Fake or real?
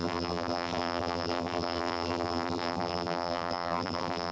fake